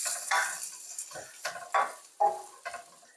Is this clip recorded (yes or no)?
yes